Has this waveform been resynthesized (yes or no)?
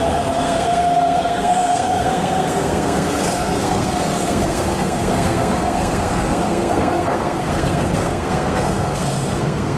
yes